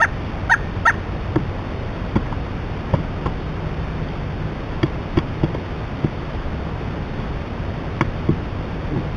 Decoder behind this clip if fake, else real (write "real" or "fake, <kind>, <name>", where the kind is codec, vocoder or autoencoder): real